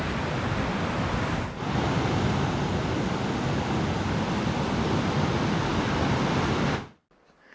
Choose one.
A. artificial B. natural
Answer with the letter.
B